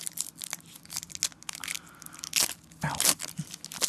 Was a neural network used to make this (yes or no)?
no